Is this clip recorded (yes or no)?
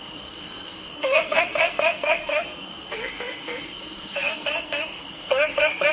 no